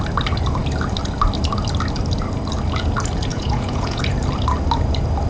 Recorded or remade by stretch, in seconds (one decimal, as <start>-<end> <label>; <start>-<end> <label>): 0.0-3.3 recorded; 3.3-4.0 remade; 4.0-5.3 recorded